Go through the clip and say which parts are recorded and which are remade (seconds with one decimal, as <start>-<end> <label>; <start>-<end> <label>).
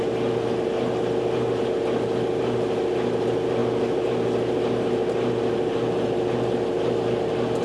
0.0-7.6 recorded